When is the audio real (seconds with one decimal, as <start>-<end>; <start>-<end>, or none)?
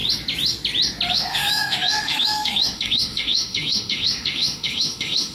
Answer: 0.0-1.1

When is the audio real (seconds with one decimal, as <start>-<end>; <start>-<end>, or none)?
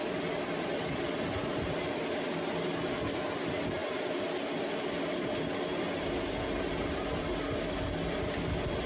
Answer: 0.0-8.9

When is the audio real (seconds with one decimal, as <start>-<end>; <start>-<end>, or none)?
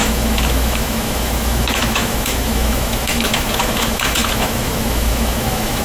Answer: none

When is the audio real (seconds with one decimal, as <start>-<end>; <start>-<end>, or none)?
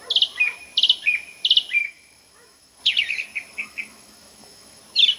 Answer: 0.0-1.8; 2.8-3.5; 4.8-5.2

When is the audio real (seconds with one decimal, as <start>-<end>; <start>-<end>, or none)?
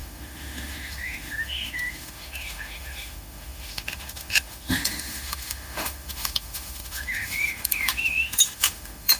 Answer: none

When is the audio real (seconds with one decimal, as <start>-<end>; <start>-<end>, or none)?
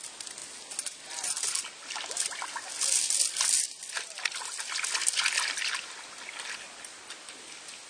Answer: 0.0-7.9